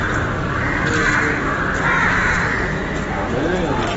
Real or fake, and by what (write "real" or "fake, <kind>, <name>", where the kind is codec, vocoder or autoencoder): real